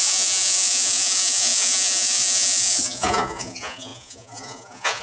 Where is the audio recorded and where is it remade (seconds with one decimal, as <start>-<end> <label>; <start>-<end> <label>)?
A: 0.0-5.0 remade